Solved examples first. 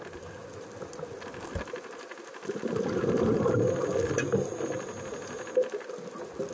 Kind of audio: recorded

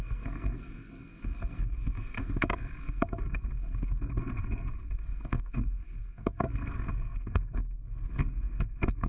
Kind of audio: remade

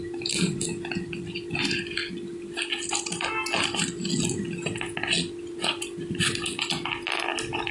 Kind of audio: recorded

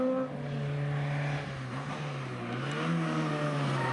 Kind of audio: recorded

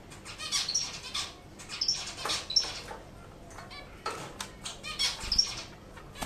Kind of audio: recorded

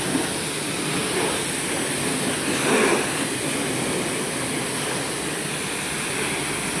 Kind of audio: recorded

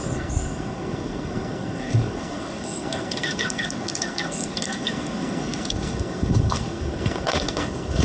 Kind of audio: remade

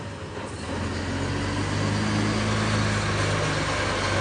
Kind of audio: recorded